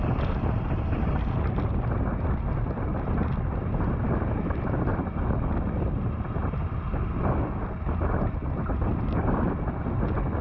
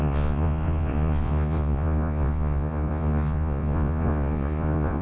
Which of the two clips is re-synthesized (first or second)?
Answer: second